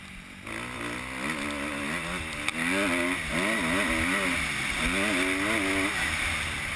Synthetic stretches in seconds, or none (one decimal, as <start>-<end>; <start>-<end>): none